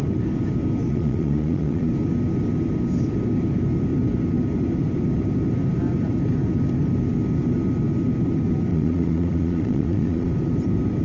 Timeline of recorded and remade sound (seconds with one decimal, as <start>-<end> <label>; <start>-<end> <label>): 0.0-0.9 recorded; 0.9-1.9 remade; 1.9-8.7 recorded; 8.7-10.3 remade; 10.3-11.0 recorded